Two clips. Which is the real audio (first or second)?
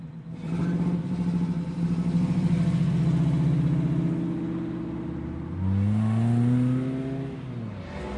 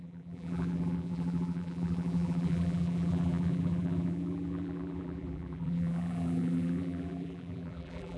first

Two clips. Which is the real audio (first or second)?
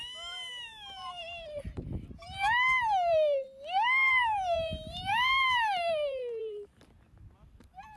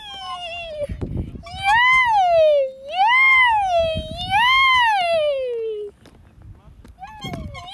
second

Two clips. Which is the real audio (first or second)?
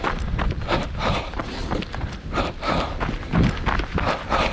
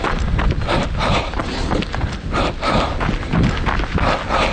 second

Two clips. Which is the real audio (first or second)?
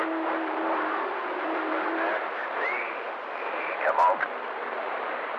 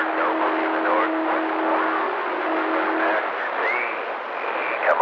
second